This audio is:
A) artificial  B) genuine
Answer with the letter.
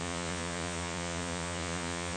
A